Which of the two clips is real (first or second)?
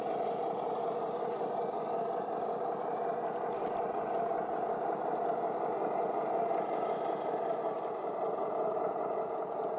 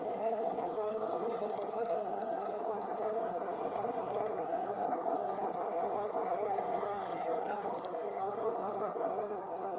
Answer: first